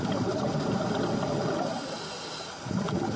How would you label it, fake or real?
real